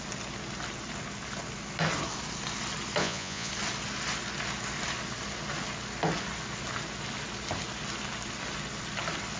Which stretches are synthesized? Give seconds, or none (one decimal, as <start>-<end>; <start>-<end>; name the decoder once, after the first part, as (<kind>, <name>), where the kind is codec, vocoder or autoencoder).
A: 3.0-3.5 (vocoder, Vocos)